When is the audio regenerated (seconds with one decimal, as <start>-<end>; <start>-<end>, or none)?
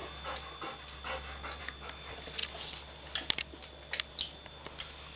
none